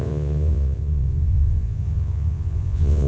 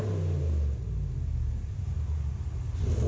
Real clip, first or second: second